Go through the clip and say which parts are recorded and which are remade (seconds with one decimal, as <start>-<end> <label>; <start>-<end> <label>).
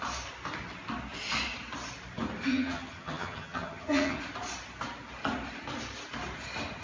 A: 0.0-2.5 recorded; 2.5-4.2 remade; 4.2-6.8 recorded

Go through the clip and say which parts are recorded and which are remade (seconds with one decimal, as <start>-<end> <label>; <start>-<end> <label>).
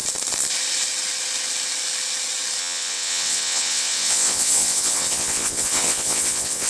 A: 0.0-2.6 recorded; 2.6-6.7 remade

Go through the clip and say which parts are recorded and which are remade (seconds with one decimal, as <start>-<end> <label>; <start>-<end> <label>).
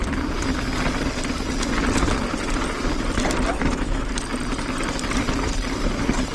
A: 0.0-3.5 recorded; 3.5-4.1 remade; 4.1-6.3 recorded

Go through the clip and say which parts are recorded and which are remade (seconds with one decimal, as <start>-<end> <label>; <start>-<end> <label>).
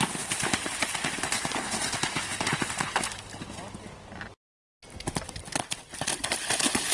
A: 0.0-6.9 recorded